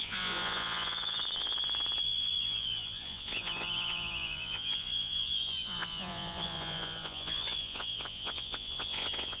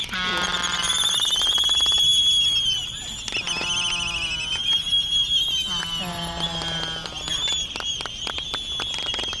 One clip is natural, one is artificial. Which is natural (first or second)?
second